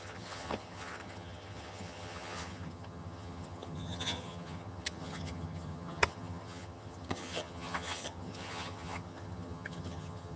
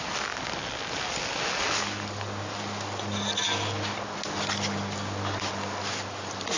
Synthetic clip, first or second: first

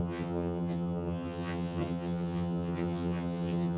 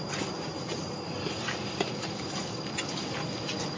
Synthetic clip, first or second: first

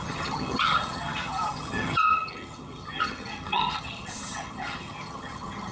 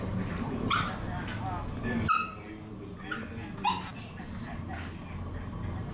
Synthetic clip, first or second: first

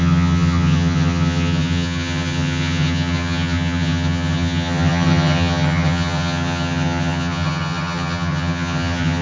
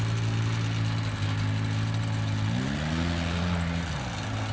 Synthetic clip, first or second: first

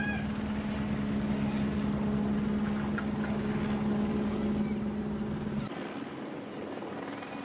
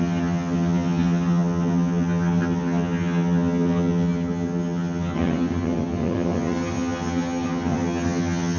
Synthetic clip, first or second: second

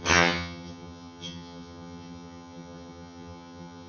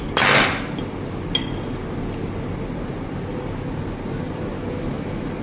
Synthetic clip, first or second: first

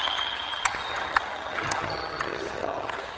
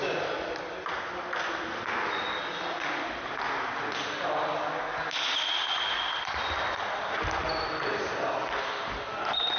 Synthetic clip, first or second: first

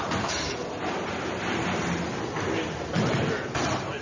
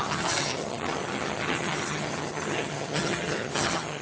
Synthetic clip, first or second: second